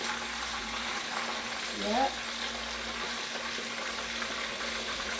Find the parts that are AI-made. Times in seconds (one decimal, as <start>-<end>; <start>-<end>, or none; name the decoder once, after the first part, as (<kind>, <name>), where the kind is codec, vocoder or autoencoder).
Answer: 0.5-1.0 (vocoder, Vocos); 4.5-5.2